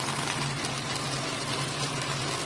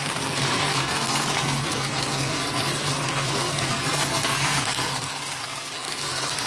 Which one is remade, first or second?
second